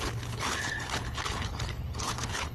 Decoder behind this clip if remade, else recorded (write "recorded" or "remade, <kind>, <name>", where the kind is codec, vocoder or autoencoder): remade, codec, HILCodec